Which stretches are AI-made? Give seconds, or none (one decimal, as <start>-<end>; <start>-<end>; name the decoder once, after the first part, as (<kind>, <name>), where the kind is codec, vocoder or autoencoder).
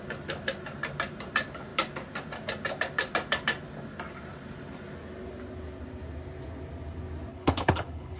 7.3-8.2 (codec, HILCodec)